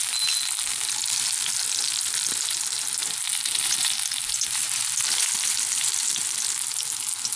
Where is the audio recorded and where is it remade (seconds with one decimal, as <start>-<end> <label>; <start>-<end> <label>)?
0.0-3.3 recorded; 3.3-6.2 remade; 6.2-7.4 recorded